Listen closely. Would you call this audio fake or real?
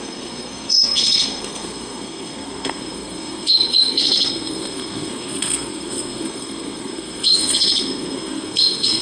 fake